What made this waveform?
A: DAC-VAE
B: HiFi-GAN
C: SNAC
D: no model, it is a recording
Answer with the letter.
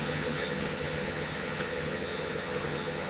B